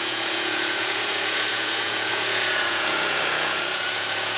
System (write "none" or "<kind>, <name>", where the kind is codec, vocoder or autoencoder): vocoder, Vocos